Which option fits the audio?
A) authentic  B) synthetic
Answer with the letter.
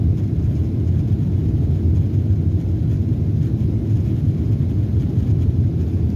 A